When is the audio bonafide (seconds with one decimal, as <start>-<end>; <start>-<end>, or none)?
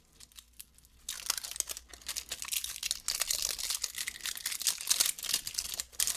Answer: 0.0-6.2